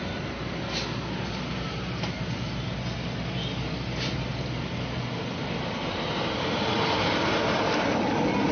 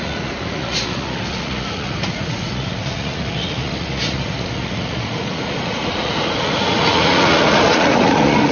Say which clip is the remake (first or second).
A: second